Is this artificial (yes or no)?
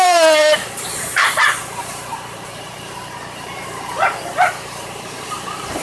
yes